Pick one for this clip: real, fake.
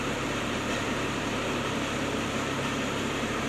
fake